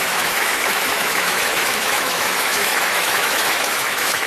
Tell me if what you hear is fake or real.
fake